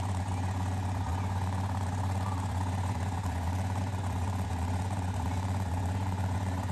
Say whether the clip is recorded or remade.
remade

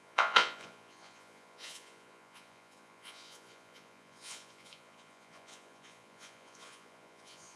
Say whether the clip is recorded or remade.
remade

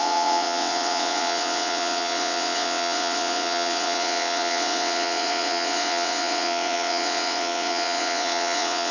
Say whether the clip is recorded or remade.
remade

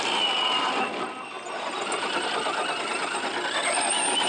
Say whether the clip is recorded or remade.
recorded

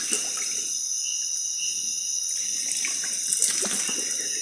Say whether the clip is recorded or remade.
recorded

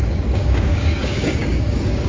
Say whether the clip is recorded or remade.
remade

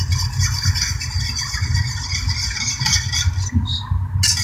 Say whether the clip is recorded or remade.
recorded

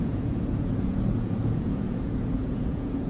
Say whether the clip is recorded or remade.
remade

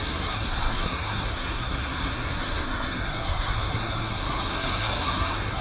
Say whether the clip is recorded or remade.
remade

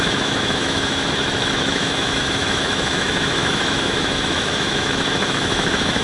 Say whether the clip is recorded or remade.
remade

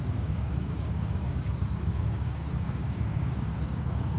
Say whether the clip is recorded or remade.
remade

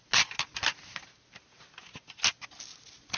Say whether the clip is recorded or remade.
recorded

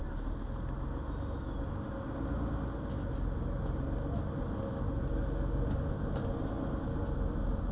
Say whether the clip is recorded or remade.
recorded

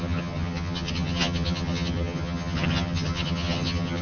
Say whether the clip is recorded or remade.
remade